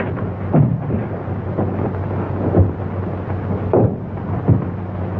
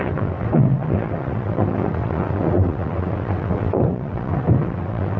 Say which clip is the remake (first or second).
second